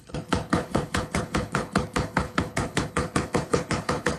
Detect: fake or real fake